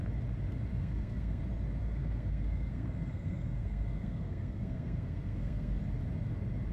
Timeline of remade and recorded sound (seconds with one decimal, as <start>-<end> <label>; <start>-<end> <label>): 0.0-0.7 recorded; 0.7-1.4 remade; 1.4-1.8 recorded; 1.8-5.8 remade; 5.8-6.7 recorded